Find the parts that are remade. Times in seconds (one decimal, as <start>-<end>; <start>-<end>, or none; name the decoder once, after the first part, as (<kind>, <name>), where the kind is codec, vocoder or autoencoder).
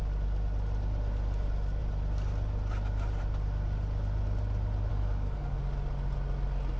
4.9-5.6 (codec, DAC)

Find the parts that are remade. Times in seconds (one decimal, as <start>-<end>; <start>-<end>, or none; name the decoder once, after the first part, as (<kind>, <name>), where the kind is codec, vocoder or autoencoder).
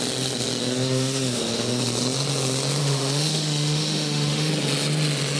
0.6-1.8 (autoencoder, DAC-VAE); 2.8-4.5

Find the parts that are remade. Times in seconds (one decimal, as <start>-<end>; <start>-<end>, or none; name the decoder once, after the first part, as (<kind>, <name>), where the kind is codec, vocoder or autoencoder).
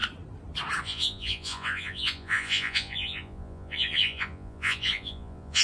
0.8-5.6 (vocoder, Vocos)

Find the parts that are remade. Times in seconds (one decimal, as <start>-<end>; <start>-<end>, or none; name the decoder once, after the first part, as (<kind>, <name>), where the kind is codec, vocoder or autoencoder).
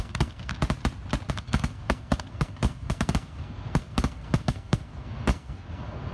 0.0-0.5 (codec, SNAC); 1.3-6.1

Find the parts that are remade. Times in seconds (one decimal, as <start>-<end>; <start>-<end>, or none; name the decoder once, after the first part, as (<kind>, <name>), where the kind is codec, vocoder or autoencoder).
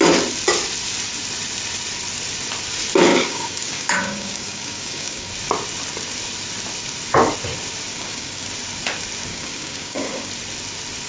3.1-5.3 (codec, DAC); 7.9-8.5; 9.3-10.3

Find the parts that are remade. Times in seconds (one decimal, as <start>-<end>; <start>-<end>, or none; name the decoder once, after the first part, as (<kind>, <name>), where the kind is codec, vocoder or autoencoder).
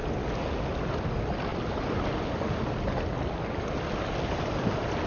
none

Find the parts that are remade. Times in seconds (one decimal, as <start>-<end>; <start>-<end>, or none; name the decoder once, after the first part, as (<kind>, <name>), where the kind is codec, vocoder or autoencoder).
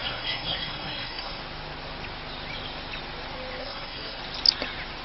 0.0-1.4 (codec, SNAC); 3.6-4.2